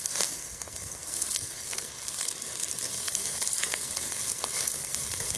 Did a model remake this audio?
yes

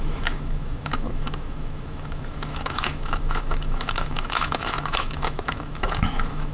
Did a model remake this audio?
yes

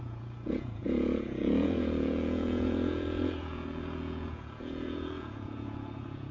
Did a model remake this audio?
yes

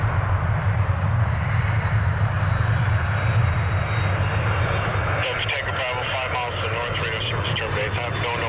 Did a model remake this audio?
no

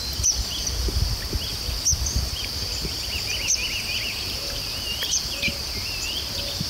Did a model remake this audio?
no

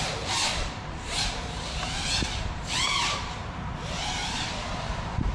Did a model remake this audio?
yes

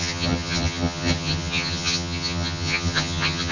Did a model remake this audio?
yes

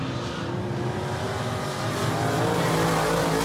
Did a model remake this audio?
no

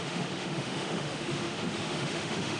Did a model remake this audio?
yes